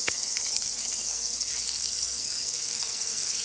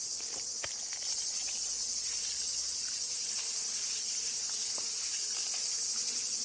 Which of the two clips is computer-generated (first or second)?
first